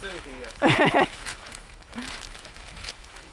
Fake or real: fake